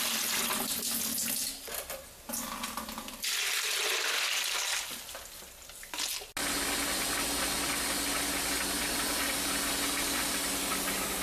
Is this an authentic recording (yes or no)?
yes